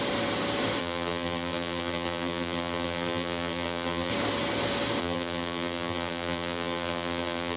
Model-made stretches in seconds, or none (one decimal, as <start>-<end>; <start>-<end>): 0.8-4.1; 5.0-7.6